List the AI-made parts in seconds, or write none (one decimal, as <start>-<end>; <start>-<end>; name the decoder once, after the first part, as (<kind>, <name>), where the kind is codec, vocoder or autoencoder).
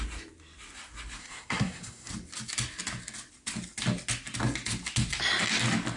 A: 1.2-2.1 (codec, SNAC)